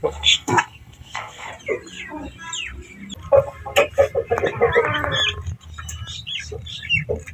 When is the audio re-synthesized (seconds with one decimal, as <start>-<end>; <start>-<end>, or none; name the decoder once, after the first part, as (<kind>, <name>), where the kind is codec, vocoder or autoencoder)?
0.0-1.5 (codec, SNAC)